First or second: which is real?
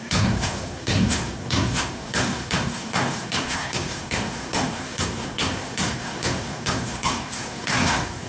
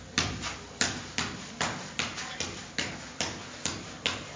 second